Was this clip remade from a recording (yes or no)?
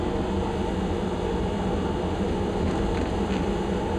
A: no